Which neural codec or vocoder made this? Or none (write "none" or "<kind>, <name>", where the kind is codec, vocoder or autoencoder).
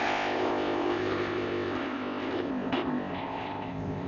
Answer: codec, ZipCodec